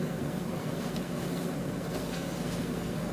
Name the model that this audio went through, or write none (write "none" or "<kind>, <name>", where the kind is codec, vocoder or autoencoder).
codec, SNAC